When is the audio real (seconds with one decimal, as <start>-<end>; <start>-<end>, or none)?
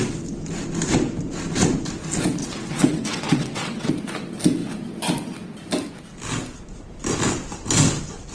0.0-2.4; 3.9-8.3